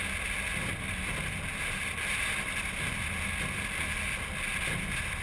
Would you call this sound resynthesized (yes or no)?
no